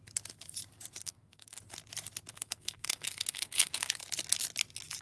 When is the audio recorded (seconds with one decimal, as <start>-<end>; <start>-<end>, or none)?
0.0-1.0; 1.6-2.3; 4.0-5.0